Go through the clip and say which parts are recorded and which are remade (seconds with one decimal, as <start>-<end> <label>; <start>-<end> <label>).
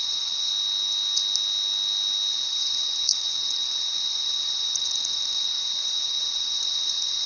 0.0-0.5 remade; 0.5-2.3 recorded; 2.3-7.3 remade